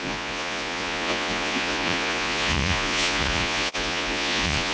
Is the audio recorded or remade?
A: remade